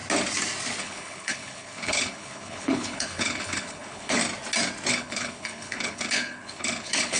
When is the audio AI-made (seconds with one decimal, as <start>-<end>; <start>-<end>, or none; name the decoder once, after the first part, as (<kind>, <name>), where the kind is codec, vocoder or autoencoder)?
0.8-4.2 (codec, HILCodec); 4.9-7.2